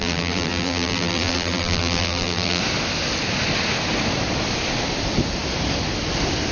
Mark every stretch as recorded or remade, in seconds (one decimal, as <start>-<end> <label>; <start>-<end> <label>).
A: 0.0-2.6 remade; 2.6-6.5 recorded